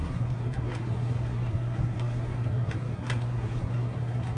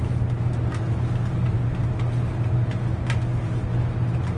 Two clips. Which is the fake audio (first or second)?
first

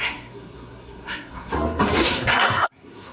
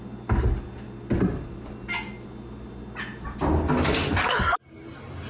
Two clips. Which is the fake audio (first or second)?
first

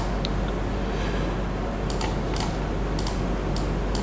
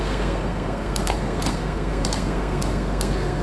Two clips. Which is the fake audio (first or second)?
second